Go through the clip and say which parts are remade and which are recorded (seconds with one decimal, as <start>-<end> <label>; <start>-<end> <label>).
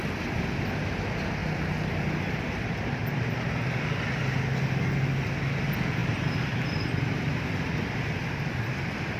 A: 0.0-9.2 recorded